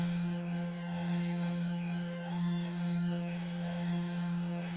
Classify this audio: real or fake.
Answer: fake